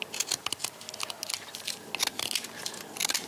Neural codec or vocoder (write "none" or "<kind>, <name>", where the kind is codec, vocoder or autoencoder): none